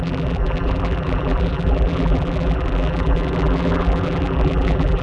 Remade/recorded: remade